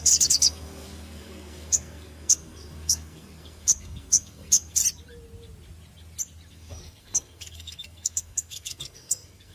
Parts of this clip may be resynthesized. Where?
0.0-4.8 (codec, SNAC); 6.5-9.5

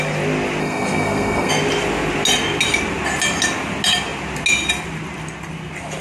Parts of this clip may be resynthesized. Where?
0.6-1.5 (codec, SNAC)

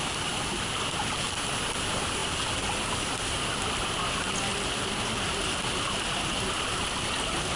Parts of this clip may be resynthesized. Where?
none